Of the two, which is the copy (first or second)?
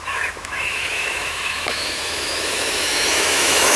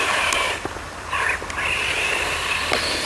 first